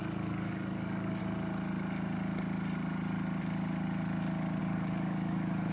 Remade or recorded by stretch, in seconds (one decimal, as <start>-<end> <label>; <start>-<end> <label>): 0.0-1.2 remade; 1.2-4.6 recorded; 4.6-5.7 remade